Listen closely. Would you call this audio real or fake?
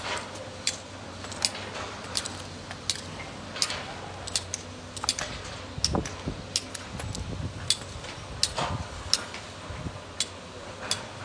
real